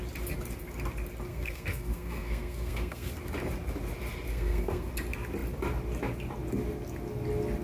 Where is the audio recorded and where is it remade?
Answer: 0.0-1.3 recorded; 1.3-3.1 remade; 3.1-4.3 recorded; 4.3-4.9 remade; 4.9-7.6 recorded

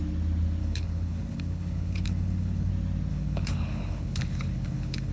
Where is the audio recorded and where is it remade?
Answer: 0.0-0.6 recorded; 0.6-2.7 remade; 2.7-3.1 recorded; 3.1-5.1 remade

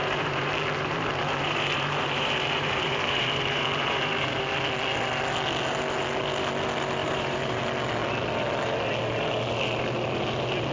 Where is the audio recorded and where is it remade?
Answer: 0.0-4.5 remade; 4.5-7.0 recorded; 7.0-7.6 remade; 7.6-10.7 recorded

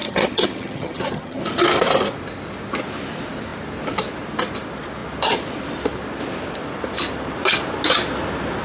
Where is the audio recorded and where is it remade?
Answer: 0.0-1.4 remade; 1.4-8.6 recorded

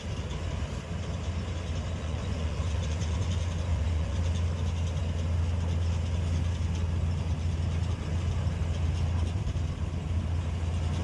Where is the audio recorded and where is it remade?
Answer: 0.0-2.0 recorded; 2.0-3.3 remade; 3.3-3.7 recorded; 3.7-4.2 remade; 4.2-11.0 recorded

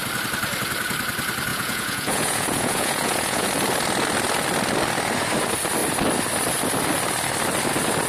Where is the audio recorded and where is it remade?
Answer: 0.0-1.5 recorded; 1.5-3.5 remade; 3.5-8.1 recorded

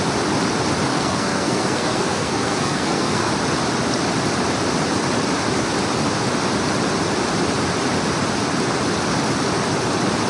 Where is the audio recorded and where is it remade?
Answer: 0.0-0.9 recorded; 0.9-3.3 remade; 3.3-10.3 recorded